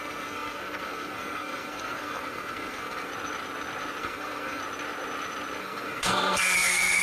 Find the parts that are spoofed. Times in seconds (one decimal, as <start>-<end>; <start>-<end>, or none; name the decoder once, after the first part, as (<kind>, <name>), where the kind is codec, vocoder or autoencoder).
0.0-3.1 (codec, SNAC); 4.0-4.6; 5.6-7.0